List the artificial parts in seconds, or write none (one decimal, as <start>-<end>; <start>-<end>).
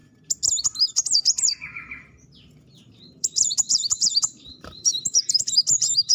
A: 0.9-6.1